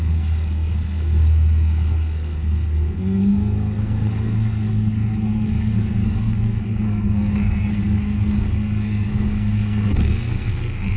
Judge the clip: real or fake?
fake